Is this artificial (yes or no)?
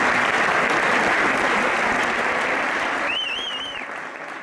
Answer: yes